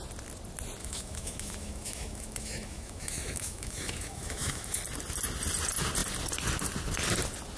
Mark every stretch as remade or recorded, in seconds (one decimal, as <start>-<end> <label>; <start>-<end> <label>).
0.0-0.8 recorded; 0.8-4.8 remade; 4.8-7.6 recorded